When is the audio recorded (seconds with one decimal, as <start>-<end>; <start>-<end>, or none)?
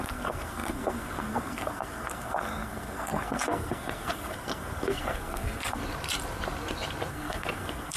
5.8-7.1